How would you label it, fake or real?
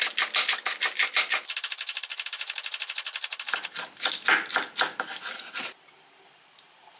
real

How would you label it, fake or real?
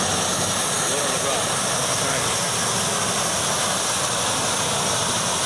real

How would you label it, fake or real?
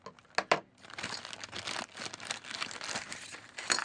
real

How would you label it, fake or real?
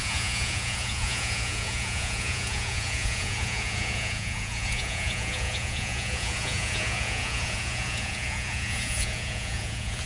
fake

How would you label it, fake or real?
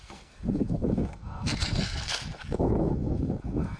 fake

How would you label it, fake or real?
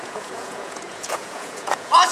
fake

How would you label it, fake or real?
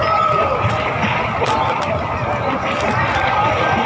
real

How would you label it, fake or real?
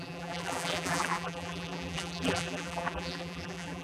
fake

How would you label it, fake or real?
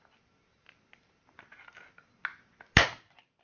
real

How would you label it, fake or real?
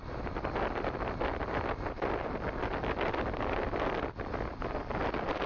real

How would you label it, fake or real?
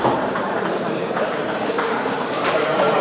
fake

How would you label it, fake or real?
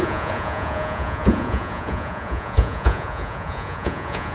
fake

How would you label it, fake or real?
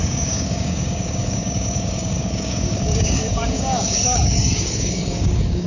fake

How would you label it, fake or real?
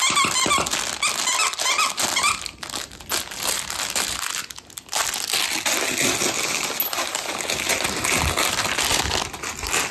real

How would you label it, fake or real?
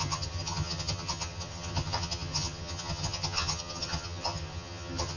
fake